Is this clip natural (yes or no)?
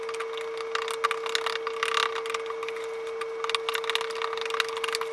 yes